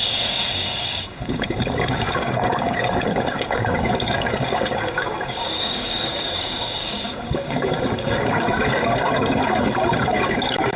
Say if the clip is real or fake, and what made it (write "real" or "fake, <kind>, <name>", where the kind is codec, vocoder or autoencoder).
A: fake, codec, DAC